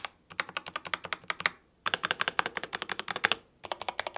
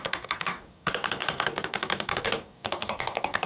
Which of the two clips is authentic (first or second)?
first